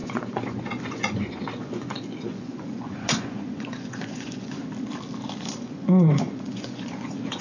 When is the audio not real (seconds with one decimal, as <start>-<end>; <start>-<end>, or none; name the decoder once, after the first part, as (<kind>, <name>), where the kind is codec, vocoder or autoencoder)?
0.0-4.6 (vocoder, Vocos); 5.4-7.4